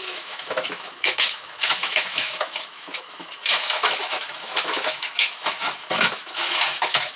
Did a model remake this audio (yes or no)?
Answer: yes